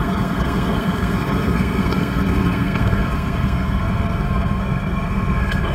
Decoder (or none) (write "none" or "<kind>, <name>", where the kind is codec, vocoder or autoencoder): codec, SNAC